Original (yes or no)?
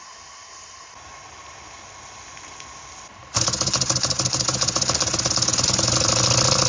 yes